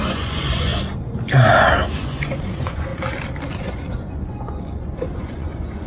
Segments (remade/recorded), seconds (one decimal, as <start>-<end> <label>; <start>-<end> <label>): 0.0-0.7 remade; 0.7-1.9 recorded; 1.9-2.9 remade; 2.9-3.6 recorded; 3.6-5.9 remade